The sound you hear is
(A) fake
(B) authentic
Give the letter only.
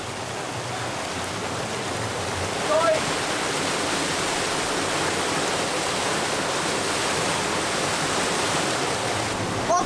B